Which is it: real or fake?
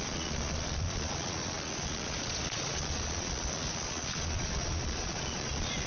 fake